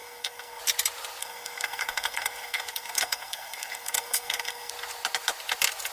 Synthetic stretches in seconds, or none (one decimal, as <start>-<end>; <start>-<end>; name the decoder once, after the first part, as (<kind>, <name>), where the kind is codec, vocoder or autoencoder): 0.0-0.6 (codec, SNAC); 1.2-4.7